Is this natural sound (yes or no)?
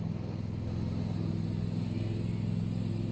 yes